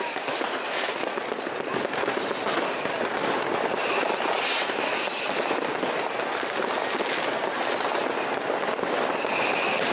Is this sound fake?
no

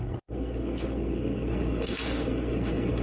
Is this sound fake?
yes